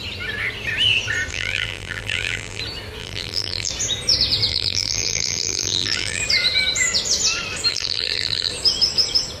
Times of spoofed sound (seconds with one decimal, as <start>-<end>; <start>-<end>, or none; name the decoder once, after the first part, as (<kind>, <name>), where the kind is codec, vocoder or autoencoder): 1.3-2.6 (vocoder, BigVGAN v2); 3.0-3.7; 4.5-6.2; 7.7-8.5